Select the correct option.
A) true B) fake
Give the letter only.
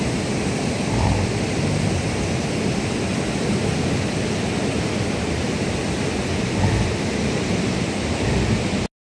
A